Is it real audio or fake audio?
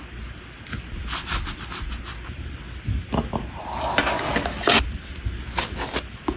real